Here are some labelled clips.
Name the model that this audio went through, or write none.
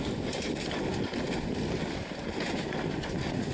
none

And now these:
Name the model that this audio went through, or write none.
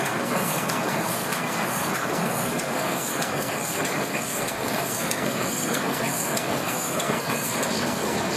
codec, SNAC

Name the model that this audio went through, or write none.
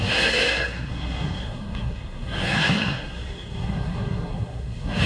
codec, SNAC